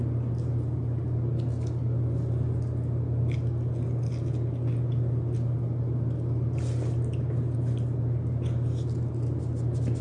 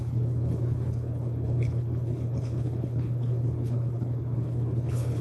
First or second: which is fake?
second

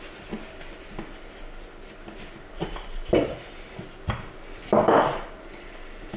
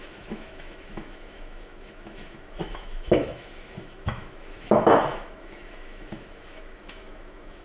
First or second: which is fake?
second